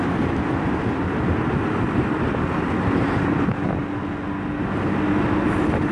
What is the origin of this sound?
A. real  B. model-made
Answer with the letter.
A